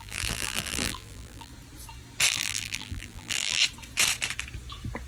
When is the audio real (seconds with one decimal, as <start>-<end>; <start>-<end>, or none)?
1.5-2.3; 3.6-5.1